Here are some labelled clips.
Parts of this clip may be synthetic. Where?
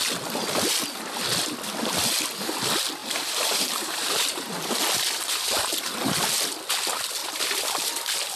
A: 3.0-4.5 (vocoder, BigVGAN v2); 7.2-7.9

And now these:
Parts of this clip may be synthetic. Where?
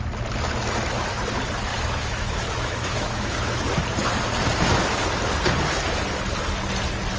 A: 1.7-3.5 (autoencoder, DAC-VAE)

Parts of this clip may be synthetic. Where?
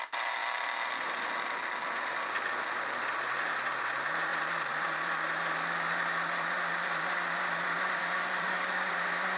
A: 8.0-8.9 (codec, DAC)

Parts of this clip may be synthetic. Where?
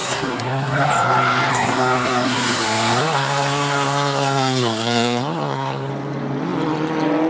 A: 0.0-0.9 (codec, SNAC); 1.5-5.9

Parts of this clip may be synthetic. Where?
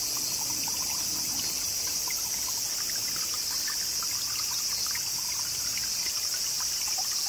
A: none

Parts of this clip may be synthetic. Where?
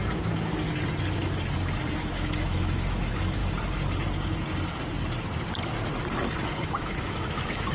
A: 1.9-3.4 (autoencoder, DAC-VAE); 6.4-7.7